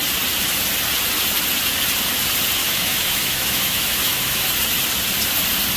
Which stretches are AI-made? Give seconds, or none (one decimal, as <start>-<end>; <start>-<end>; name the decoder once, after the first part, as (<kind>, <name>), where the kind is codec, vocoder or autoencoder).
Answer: 2.6-4.5 (autoencoder, DAC-VAE)